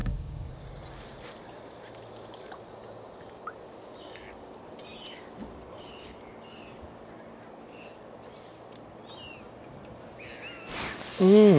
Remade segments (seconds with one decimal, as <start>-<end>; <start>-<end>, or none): 0.0-0.6